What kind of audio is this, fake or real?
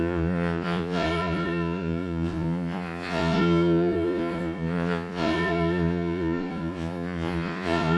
fake